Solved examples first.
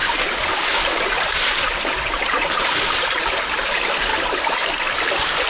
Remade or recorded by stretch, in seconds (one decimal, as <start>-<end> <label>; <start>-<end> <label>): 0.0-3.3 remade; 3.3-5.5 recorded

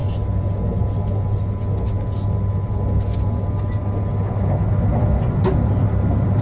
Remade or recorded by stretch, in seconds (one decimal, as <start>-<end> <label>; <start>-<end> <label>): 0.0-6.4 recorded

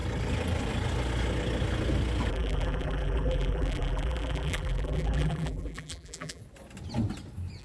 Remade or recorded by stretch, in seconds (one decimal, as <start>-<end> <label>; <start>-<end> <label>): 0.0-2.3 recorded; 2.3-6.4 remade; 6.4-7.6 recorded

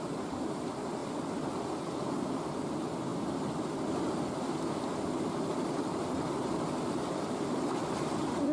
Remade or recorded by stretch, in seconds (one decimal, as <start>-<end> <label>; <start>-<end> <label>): 0.0-8.5 recorded

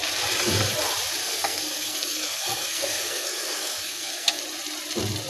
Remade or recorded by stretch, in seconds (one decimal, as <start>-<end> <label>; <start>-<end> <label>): 0.0-1.2 recorded; 1.2-4.4 remade; 4.4-5.3 recorded

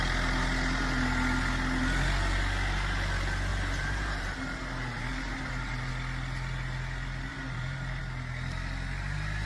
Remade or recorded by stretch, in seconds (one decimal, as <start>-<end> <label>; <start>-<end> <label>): 0.0-3.5 recorded; 3.5-5.9 remade; 5.9-7.3 recorded; 7.3-8.0 remade; 8.0-9.5 recorded